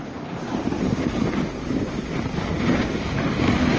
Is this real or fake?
real